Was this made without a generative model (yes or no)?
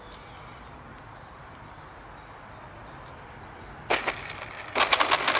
yes